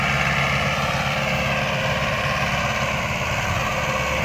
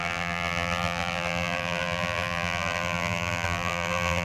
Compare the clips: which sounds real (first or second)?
first